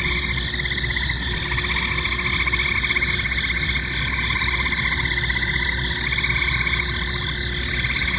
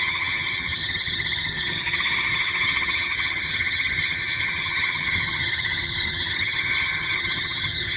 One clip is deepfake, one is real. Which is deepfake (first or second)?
second